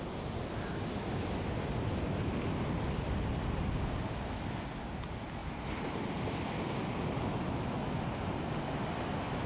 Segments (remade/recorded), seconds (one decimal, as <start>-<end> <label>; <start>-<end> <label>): 0.0-9.5 recorded